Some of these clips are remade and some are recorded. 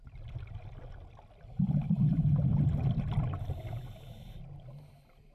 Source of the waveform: recorded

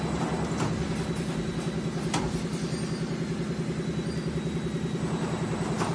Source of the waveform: recorded